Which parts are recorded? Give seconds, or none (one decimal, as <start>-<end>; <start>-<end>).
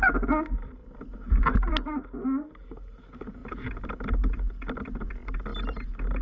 0.0-6.2